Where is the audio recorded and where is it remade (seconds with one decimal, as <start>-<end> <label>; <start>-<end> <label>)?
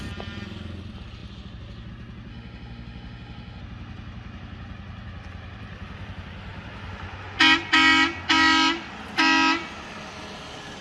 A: 0.0-2.3 recorded; 2.3-3.6 remade; 3.6-10.8 recorded